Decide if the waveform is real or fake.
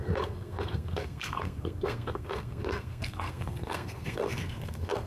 fake